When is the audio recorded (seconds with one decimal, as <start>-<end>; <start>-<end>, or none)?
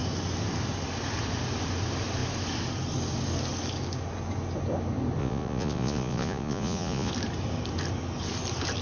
0.0-5.2; 7.1-8.8